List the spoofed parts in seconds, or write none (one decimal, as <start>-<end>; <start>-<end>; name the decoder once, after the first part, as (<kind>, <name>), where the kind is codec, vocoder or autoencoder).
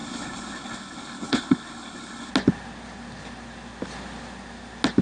0.0-2.3 (codec, HILCodec)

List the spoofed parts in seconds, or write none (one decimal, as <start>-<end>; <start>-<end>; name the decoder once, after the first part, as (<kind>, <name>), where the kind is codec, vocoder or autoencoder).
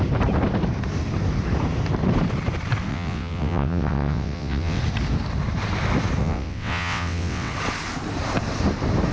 2.9-4.8 (vocoder, WaveNeXt); 6.2-7.5